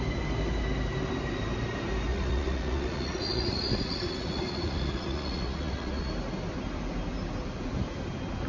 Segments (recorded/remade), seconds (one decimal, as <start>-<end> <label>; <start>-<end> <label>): 0.0-2.1 recorded; 2.1-6.1 remade; 6.1-8.5 recorded